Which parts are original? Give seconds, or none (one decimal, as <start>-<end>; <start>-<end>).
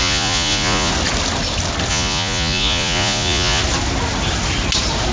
0.9-1.9; 3.6-5.1